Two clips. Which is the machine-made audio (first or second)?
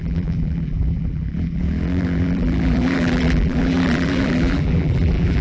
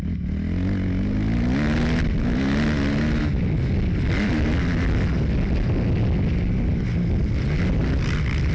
first